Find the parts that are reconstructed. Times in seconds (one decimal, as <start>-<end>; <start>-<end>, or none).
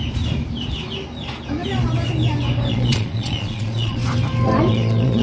2.7-4.0; 4.7-5.2